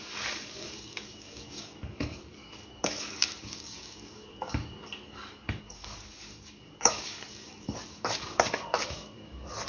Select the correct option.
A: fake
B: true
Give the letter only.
A